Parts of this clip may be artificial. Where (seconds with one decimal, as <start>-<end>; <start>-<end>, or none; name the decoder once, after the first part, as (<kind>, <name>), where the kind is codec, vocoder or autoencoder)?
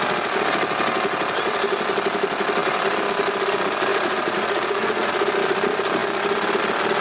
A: 3.9-5.1 (vocoder, Vocos)